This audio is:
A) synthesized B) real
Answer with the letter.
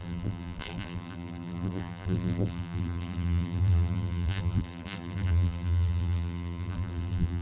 A